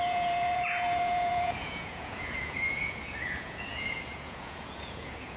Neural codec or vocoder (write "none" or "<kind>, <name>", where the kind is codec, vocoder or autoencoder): vocoder, Vocos